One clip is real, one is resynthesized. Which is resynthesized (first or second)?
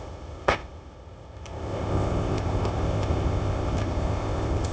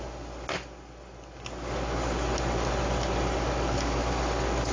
first